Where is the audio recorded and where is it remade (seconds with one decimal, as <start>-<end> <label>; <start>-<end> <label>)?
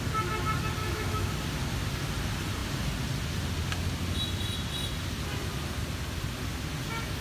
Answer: 0.0-0.8 recorded; 0.8-1.3 remade; 1.3-7.2 recorded